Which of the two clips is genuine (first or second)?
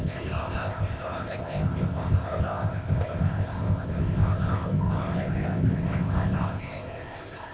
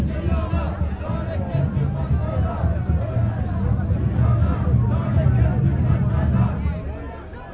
second